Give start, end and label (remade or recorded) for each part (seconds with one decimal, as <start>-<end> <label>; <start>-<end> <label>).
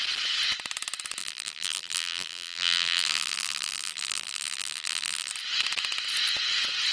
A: 0.0-1.2 recorded; 1.2-5.3 remade; 5.3-6.9 recorded